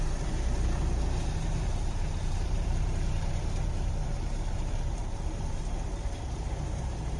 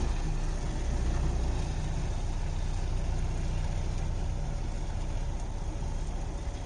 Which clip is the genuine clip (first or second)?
second